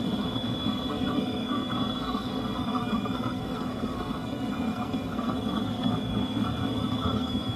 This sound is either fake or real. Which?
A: fake